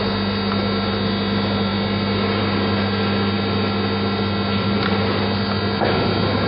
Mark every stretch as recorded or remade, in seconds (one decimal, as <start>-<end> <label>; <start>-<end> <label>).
0.0-6.5 recorded